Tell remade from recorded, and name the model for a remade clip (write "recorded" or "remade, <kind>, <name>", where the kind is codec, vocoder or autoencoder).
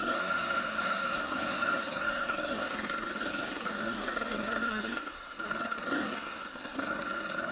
remade, codec, SNAC